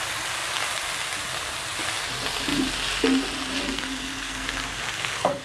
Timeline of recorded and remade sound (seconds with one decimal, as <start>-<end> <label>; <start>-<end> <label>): 0.0-3.6 recorded; 3.6-5.4 remade